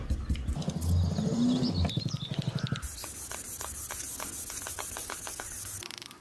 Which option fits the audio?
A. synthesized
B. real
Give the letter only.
B